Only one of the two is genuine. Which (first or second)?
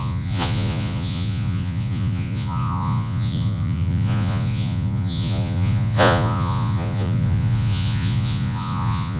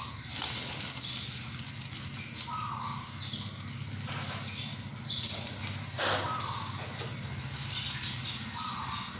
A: second